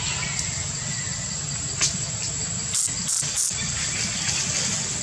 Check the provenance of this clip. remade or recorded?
recorded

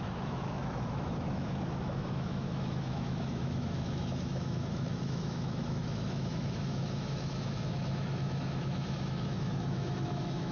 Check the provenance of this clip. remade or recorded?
remade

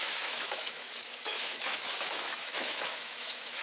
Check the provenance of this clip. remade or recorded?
remade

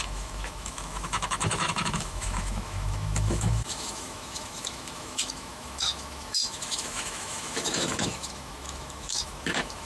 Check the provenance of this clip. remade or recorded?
remade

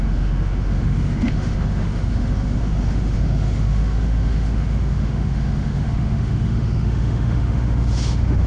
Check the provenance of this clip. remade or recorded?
remade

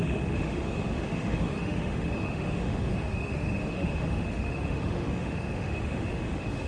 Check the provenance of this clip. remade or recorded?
remade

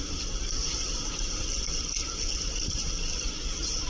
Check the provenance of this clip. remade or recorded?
recorded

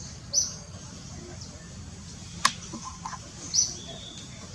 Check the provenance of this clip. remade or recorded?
recorded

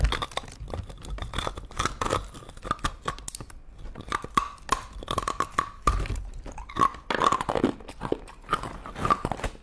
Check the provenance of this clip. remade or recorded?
recorded